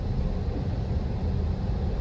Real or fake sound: real